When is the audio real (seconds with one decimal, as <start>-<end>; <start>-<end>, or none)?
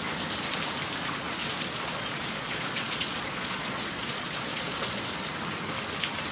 0.0-1.4; 5.0-6.3